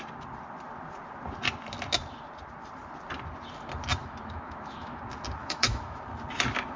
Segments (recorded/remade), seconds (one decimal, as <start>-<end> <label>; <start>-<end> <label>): 0.0-4.0 recorded; 4.0-5.0 remade; 5.0-5.4 recorded; 5.4-6.0 remade; 6.0-6.8 recorded